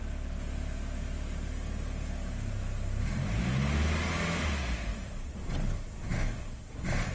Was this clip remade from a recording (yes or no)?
no